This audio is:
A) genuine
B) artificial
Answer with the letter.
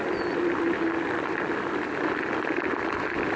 B